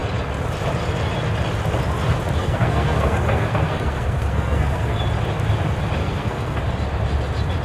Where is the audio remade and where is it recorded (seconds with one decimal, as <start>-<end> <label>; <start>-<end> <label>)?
0.0-2.4 recorded; 2.4-5.0 remade; 5.0-6.0 recorded; 6.0-6.6 remade; 6.6-7.6 recorded